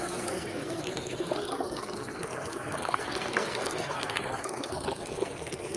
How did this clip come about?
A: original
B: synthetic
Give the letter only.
B